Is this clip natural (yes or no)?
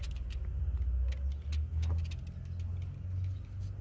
yes